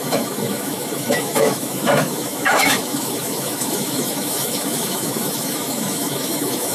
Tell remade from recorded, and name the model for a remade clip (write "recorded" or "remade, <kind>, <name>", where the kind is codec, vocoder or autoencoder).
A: remade, autoencoder, DAC-VAE